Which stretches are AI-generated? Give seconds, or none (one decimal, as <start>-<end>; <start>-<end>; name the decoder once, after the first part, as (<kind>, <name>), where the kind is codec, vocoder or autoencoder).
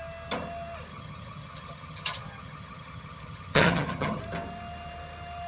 0.9-4.2 (vocoder, HiFi-GAN)